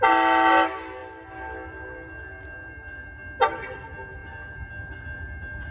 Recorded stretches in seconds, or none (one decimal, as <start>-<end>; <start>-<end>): 0.0-5.7